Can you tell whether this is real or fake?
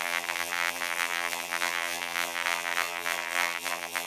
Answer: fake